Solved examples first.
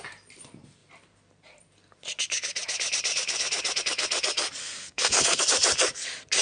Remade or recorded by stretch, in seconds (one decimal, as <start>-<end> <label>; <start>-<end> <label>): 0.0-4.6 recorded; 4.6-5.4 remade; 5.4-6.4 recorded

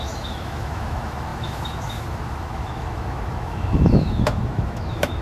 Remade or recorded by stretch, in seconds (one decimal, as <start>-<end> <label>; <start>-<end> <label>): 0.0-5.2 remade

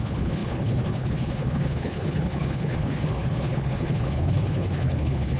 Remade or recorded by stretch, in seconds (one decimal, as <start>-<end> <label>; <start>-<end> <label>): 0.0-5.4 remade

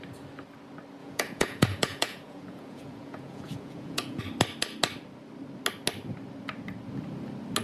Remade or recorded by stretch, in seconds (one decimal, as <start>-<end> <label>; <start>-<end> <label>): 0.0-1.0 recorded; 1.0-4.2 remade; 4.2-7.6 recorded

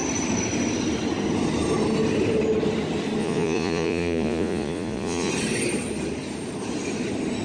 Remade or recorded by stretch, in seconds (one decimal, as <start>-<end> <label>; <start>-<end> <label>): 0.0-3.2 recorded; 3.2-5.3 remade; 5.3-7.4 recorded

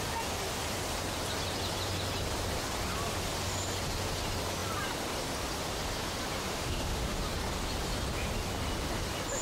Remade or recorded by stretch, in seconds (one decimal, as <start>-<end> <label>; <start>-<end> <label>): 0.0-6.5 recorded; 6.5-7.2 remade; 7.2-9.4 recorded

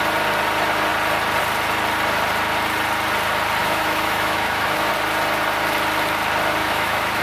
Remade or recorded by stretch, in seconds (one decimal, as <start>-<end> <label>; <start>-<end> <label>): 0.0-3.6 recorded; 3.6-4.9 remade; 4.9-6.6 recorded; 6.6-7.2 remade